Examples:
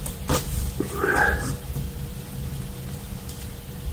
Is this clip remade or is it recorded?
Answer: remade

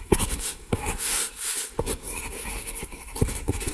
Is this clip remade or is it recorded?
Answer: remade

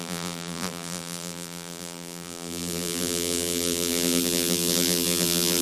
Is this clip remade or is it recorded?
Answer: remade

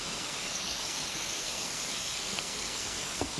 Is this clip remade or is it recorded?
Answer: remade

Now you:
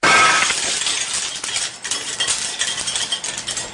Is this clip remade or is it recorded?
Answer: recorded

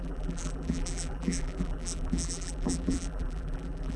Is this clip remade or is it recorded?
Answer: remade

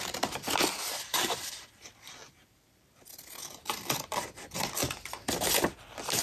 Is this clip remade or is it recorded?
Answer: remade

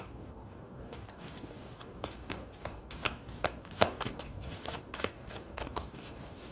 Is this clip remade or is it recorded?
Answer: remade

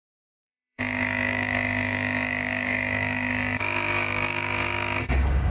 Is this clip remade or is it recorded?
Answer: remade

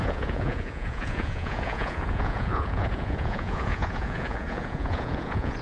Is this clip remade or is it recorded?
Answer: remade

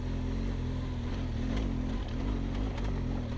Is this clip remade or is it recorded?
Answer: recorded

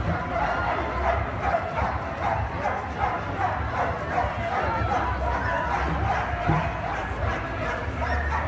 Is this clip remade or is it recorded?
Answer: recorded